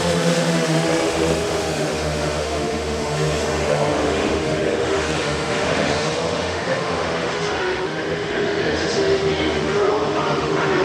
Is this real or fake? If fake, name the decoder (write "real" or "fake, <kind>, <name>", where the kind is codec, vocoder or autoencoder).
fake, autoencoder, DAC-VAE